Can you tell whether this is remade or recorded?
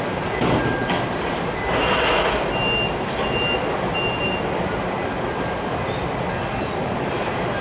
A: recorded